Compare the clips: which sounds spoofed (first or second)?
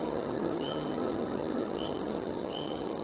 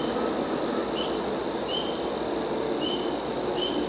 first